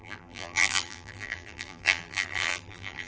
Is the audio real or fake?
fake